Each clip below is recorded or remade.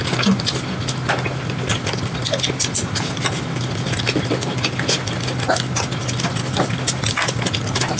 recorded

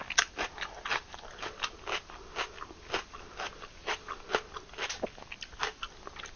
recorded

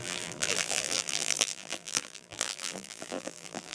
remade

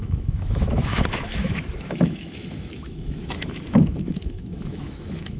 remade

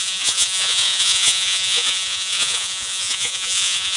remade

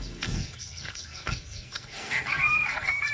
remade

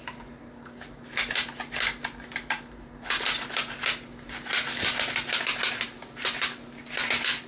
recorded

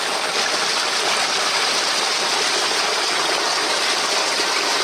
recorded